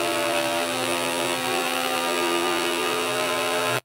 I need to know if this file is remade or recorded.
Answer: remade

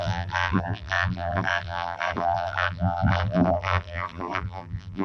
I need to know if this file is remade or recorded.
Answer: remade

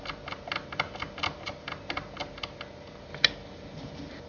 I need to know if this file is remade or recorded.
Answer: remade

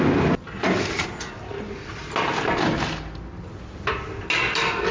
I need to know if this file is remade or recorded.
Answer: recorded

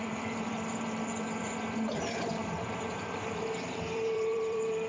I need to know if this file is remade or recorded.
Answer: remade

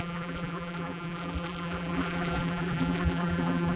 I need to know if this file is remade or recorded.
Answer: remade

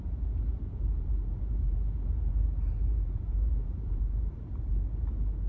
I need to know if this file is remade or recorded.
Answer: remade